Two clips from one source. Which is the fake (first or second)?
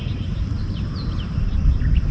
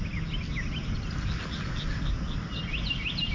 first